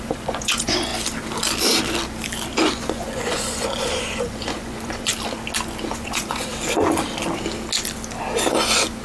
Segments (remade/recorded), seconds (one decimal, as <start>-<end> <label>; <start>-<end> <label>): 0.0-0.9 remade; 0.9-2.6 recorded; 2.6-5.1 remade; 5.1-5.9 recorded; 5.9-6.5 remade; 6.5-8.5 recorded; 8.5-9.0 remade